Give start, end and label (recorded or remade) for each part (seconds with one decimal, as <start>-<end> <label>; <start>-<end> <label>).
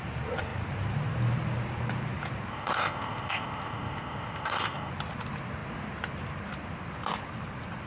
0.0-2.5 recorded; 2.5-4.9 remade; 4.9-7.9 recorded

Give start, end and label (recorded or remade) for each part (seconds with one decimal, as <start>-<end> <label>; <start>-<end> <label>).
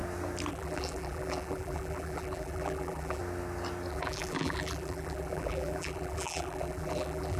0.0-0.5 recorded; 0.5-3.2 remade; 3.2-3.9 recorded; 3.9-7.4 remade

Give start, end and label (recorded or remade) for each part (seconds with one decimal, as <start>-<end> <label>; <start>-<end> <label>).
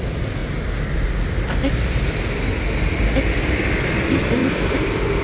0.0-0.4 remade; 0.4-3.5 recorded; 3.5-5.2 remade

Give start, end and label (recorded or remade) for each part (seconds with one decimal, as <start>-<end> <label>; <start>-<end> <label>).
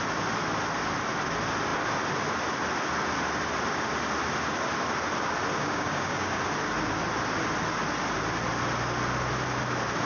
0.0-5.5 recorded; 5.5-6.4 remade; 6.4-10.1 recorded